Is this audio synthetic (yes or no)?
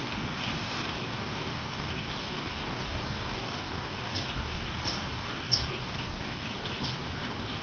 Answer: yes